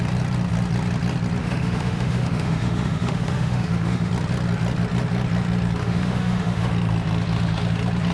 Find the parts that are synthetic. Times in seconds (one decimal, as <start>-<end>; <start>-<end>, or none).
1.4-4.1; 5.8-6.7